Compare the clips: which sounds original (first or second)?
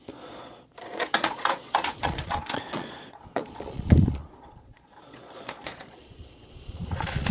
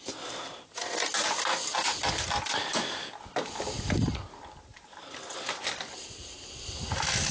second